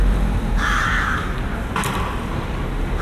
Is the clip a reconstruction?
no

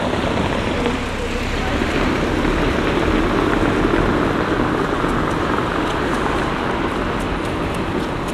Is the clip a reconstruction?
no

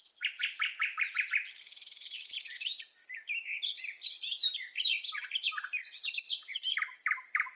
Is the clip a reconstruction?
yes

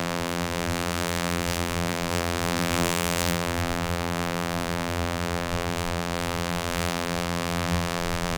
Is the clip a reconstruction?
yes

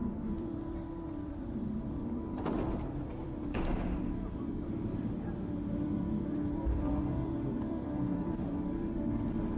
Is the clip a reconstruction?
yes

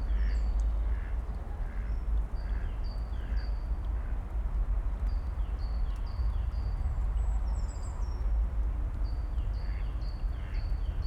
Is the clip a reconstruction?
no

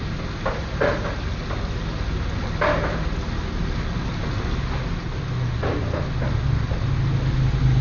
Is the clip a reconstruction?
no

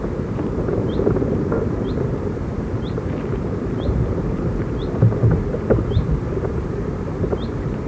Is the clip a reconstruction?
yes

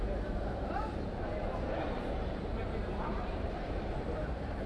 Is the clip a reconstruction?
yes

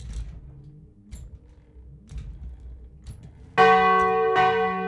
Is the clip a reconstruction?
no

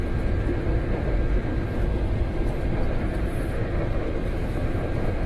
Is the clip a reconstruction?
no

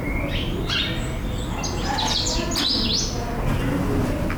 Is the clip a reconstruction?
no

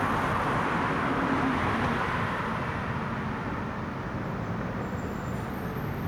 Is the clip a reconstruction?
no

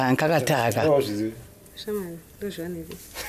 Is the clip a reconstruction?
no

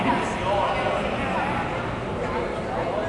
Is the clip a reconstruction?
no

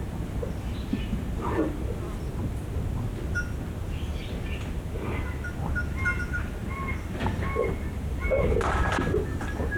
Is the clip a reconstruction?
no